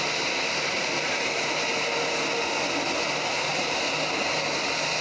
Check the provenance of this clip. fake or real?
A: real